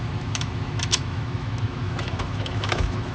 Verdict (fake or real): fake